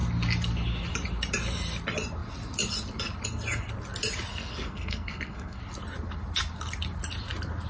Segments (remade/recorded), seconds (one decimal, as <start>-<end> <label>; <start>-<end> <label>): 0.0-4.3 recorded; 4.3-5.6 remade; 5.6-7.7 recorded